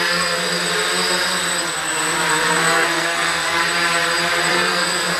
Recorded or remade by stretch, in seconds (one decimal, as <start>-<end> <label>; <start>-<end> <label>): 0.0-0.4 remade; 0.4-2.3 recorded; 2.3-3.6 remade; 3.6-4.5 recorded; 4.5-5.2 remade